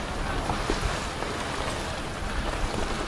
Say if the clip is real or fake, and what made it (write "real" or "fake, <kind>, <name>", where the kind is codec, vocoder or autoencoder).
real